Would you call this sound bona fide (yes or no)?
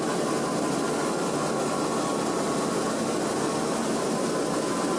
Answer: yes